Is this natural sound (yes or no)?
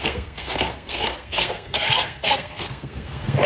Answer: no